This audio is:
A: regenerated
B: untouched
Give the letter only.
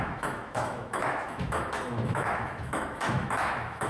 A